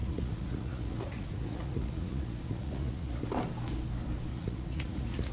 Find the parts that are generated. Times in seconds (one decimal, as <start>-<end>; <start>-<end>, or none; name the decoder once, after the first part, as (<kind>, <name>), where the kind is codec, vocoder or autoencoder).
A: 0.0-3.2 (vocoder, Vocos); 4.3-5.3